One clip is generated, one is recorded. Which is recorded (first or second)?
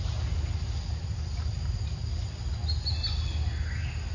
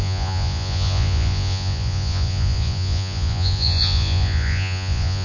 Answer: first